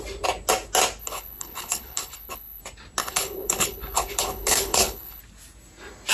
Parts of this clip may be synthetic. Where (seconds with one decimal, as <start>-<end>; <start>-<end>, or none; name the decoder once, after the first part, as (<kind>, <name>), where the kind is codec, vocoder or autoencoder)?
1.0-2.6 (codec, HILCodec); 3.0-5.2

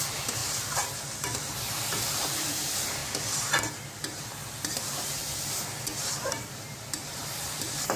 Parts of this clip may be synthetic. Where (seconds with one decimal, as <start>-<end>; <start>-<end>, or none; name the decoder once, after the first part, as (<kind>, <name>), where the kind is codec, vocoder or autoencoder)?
0.0-3.0 (vocoder, BigVGAN v2); 3.7-4.3; 6.0-8.0

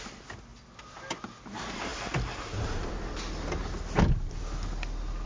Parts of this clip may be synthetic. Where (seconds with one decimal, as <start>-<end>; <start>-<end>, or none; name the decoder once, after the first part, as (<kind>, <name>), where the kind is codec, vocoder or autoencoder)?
0.5-1.3 (vocoder, BigVGAN v2)

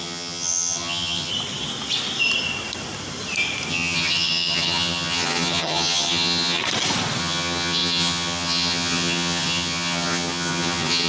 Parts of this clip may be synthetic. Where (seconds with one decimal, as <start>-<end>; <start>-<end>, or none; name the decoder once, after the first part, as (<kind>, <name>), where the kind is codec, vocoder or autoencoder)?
0.0-1.3 (vocoder, HiFi-GAN); 3.7-6.6; 7.2-11.1